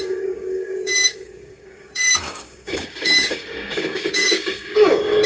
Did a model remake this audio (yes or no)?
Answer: yes